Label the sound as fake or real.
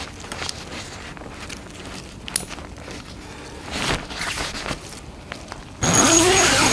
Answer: real